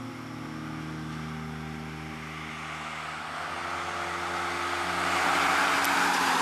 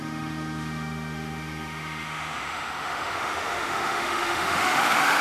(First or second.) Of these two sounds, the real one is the first